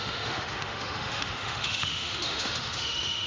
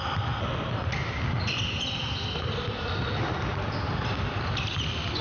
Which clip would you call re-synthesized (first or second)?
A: first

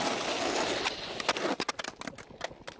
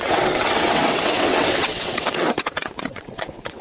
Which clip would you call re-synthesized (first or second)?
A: second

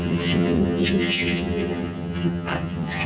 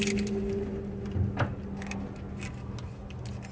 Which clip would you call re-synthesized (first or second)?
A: first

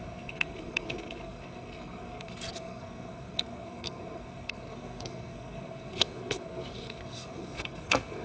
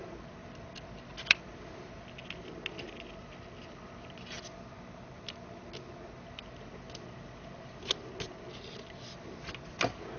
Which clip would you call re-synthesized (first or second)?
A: first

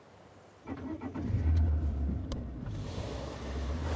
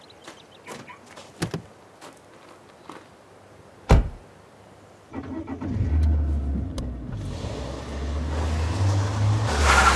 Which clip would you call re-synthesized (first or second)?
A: first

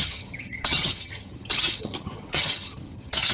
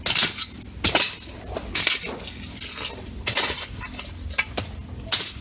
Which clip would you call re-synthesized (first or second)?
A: first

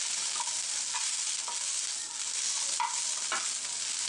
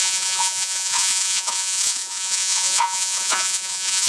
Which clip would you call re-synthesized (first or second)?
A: second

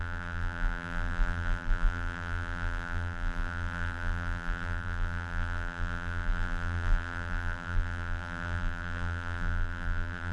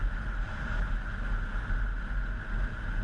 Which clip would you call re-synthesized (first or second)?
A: first